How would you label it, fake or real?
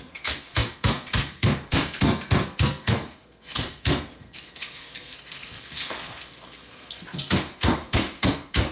fake